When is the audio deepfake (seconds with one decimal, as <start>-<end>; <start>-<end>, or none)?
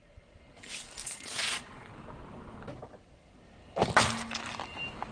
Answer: 1.0-1.9